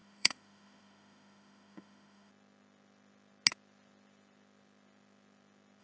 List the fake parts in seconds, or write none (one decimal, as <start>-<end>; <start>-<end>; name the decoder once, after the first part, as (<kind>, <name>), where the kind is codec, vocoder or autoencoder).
0.0-2.3 (autoencoder, DAC-VAE)